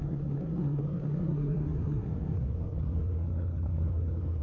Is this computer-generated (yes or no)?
yes